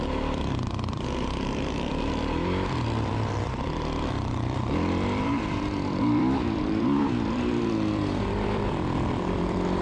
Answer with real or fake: fake